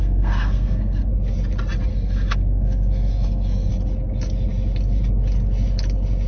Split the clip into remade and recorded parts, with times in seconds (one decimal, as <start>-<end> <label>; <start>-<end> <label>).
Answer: 0.0-1.1 remade; 1.1-1.9 recorded; 1.9-3.7 remade; 3.7-6.3 recorded